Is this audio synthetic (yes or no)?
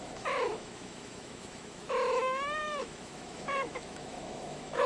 yes